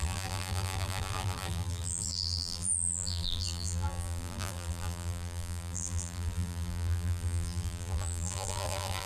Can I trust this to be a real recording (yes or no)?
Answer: no